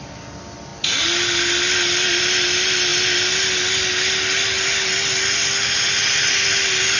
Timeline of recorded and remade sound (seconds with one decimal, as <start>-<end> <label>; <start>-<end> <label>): 0.0-7.0 recorded